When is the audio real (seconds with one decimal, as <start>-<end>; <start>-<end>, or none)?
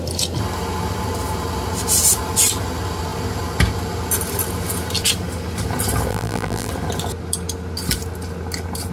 0.0-6.1; 6.7-8.9